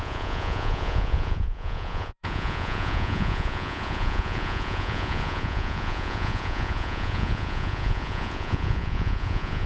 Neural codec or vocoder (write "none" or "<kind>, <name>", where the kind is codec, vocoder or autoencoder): vocoder, Vocos